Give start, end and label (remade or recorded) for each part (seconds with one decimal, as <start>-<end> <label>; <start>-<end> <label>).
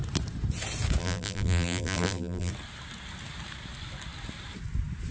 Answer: 0.0-1.0 recorded; 1.0-2.5 remade; 2.5-5.1 recorded